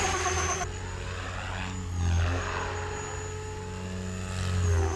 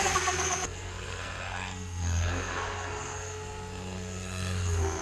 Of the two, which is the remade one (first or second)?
second